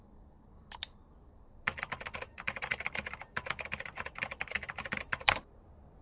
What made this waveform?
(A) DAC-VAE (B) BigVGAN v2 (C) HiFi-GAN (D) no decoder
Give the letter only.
B